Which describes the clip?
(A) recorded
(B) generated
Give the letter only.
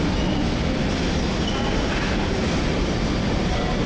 A